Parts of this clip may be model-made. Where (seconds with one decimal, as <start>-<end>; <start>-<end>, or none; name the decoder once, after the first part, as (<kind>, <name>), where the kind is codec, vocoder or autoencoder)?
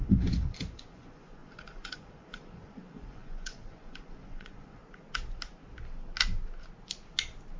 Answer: 0.0-4.8 (vocoder, Vocos)